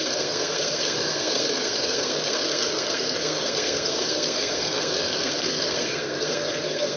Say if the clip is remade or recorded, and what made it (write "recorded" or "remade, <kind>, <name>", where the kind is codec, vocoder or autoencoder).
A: remade, codec, SNAC